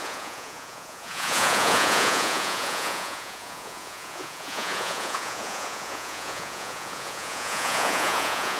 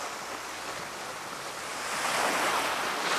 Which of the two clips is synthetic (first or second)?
first